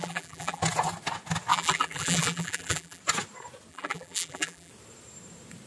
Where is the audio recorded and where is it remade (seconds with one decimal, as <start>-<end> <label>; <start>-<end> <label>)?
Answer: 0.0-0.6 remade; 0.6-1.5 recorded; 1.5-3.0 remade; 3.0-3.7 recorded; 3.7-4.7 remade; 4.7-5.7 recorded